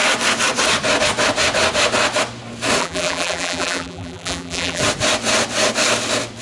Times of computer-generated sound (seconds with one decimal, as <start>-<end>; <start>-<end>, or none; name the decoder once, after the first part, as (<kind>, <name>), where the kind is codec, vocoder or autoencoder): 2.8-4.8 (vocoder, BigVGAN v2)